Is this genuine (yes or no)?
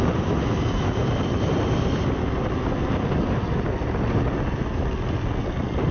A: yes